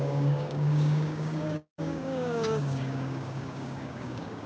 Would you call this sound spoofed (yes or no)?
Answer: yes